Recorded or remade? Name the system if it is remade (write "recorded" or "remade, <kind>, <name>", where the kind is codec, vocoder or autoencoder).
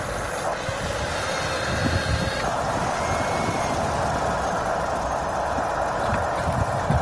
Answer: recorded